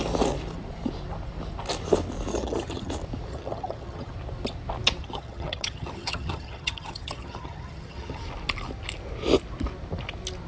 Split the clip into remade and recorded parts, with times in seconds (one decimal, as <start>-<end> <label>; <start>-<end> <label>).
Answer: 0.0-2.3 recorded; 2.3-2.9 remade; 2.9-3.3 recorded; 3.3-4.1 remade; 4.1-5.0 recorded; 5.0-8.2 remade; 8.2-10.5 recorded